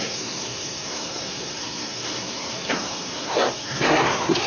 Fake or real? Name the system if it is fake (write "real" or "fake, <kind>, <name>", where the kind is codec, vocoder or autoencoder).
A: fake, codec, SNAC